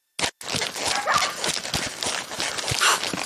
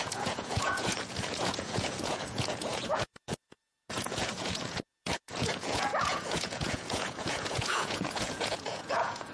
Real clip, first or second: first